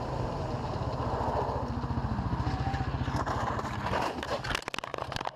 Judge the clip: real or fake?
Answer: real